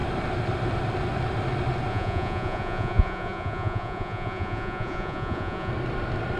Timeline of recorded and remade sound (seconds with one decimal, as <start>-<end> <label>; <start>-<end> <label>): 0.0-1.9 recorded; 1.9-5.7 remade; 5.7-6.4 recorded